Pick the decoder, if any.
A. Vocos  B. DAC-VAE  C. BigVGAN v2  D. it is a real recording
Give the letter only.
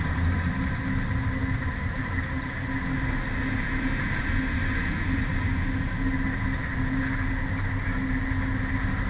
D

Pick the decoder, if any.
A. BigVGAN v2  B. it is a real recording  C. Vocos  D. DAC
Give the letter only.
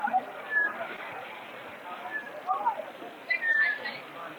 B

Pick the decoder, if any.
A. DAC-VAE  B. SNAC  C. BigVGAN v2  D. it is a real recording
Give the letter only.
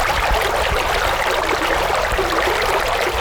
C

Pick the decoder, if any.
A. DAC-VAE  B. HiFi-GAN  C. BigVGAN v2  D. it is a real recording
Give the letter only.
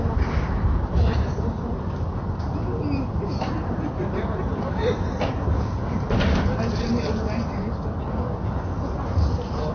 D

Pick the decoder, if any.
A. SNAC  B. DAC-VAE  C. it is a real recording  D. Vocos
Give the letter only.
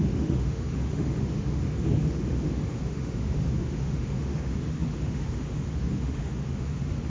B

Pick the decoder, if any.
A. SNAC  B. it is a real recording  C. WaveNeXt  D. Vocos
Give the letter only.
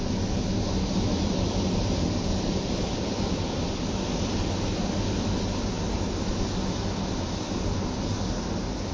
B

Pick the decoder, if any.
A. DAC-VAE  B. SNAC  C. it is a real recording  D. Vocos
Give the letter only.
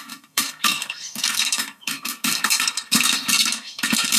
B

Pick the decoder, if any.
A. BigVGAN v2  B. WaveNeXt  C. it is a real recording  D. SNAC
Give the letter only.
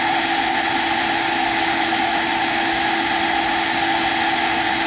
C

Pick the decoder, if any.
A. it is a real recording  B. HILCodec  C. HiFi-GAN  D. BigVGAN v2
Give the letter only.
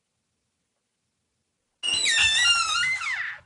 A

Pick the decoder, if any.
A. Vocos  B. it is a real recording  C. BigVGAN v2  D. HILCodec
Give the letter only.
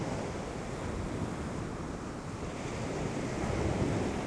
B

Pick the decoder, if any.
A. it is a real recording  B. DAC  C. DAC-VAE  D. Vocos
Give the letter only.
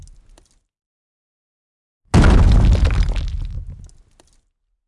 A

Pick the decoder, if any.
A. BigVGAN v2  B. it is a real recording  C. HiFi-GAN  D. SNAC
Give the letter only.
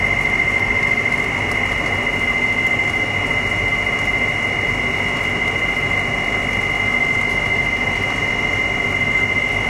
B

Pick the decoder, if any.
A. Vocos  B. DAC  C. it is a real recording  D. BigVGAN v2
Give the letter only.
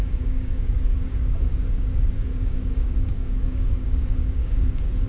B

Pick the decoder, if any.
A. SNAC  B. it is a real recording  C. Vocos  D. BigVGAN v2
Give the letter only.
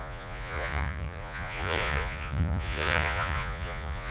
C